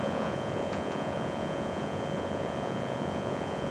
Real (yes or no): no